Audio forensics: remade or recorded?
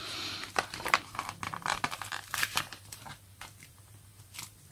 remade